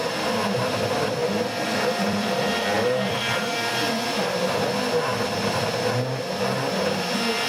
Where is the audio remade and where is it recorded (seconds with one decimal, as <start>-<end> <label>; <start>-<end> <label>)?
0.0-1.2 recorded; 1.2-4.7 remade; 4.7-7.5 recorded